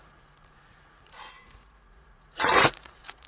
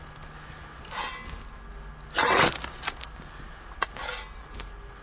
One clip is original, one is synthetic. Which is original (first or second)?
second